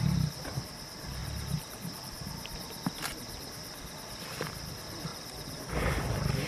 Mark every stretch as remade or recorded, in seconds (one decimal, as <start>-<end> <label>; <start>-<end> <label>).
0.0-5.1 recorded; 5.1-5.7 remade; 5.7-6.5 recorded